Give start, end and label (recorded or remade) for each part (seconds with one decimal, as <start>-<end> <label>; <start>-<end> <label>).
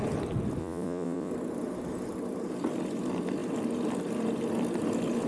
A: 0.0-0.6 recorded; 0.6-1.3 remade; 1.3-5.3 recorded